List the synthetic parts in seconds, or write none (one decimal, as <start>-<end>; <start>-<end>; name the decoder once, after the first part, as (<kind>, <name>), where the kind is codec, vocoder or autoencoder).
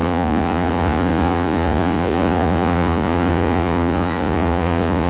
0.0-5.1 (vocoder, Vocos)